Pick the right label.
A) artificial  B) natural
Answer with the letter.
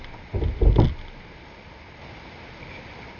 B